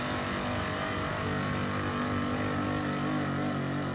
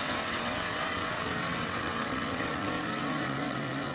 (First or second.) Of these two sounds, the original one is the first